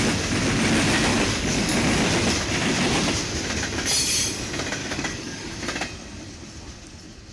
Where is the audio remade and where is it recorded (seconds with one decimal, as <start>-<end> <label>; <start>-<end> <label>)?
0.0-1.1 recorded; 1.1-2.1 remade; 2.1-4.8 recorded; 4.8-5.6 remade; 5.6-7.3 recorded